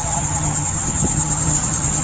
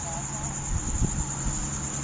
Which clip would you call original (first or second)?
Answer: second